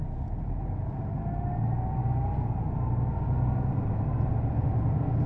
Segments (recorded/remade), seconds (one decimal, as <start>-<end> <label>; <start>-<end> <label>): 0.0-5.3 recorded